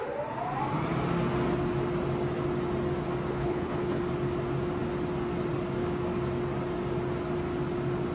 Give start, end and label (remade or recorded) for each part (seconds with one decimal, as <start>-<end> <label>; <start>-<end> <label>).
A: 0.0-3.3 recorded; 3.3-4.0 remade; 4.0-8.1 recorded